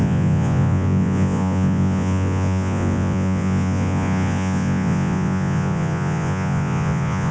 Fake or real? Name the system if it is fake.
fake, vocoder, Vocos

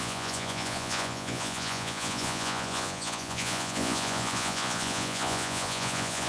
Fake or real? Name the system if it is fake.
fake, vocoder, Vocos